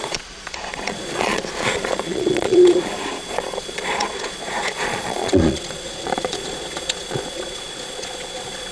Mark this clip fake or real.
fake